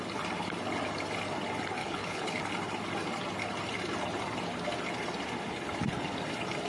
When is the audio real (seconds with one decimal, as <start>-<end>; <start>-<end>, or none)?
0.0-1.8; 2.4-6.7